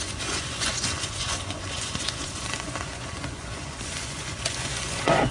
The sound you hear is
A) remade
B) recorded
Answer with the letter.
A